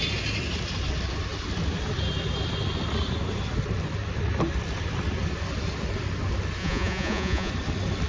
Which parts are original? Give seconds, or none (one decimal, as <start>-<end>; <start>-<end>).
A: 0.0-6.6; 7.5-8.1